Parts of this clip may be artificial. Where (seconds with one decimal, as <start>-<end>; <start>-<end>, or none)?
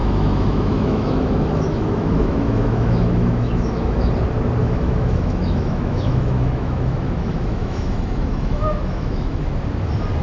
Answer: 0.0-4.1; 4.6-9.4